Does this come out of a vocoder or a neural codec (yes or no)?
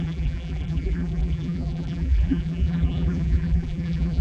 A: yes